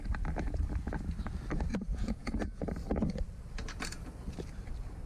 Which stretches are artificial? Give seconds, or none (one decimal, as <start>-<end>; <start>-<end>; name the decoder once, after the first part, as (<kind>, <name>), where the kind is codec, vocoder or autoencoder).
1.7-2.6 (vocoder, Vocos)